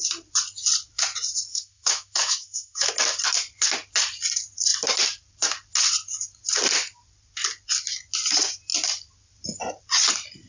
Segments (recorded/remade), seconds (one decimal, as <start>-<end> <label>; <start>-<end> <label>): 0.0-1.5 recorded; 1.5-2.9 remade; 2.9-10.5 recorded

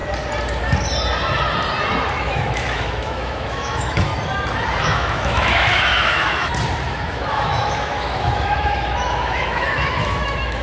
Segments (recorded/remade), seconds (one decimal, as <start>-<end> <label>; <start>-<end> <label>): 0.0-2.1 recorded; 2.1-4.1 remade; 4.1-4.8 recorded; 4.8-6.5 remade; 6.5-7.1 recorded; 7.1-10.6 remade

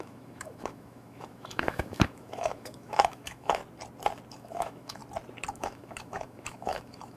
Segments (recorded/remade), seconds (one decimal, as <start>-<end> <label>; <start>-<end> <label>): 0.0-3.6 remade; 3.6-4.3 recorded; 4.3-5.0 remade; 5.0-5.5 recorded; 5.5-7.2 remade